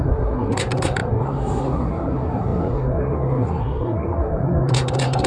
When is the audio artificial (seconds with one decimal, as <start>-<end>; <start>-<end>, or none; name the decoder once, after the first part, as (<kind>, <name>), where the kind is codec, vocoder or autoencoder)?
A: 0.0-5.3 (codec, SNAC)